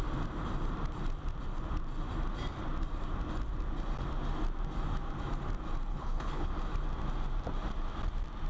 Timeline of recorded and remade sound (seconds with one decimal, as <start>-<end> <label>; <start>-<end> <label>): 0.0-5.9 recorded; 5.9-6.5 remade; 6.5-8.5 recorded